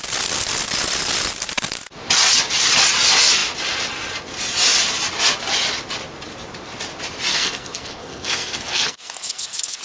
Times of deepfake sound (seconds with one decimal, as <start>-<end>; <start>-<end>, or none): 7.3-9.8